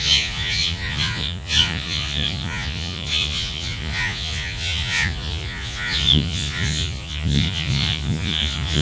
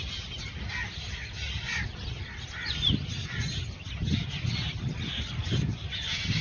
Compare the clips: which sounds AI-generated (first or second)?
first